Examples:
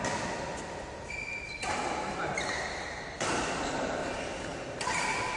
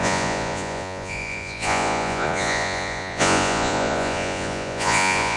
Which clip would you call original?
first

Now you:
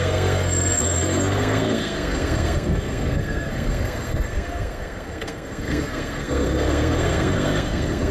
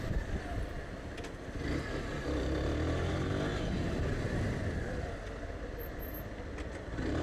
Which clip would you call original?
second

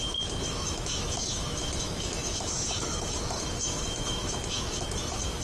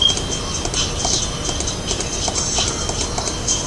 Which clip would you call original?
second